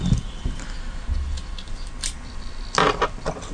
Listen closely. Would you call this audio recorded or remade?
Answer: recorded